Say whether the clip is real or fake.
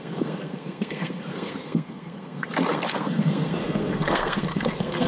fake